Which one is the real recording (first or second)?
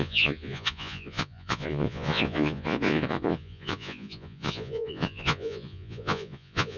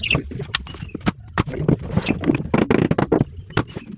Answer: second